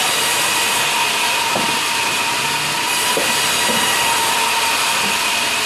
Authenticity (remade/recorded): recorded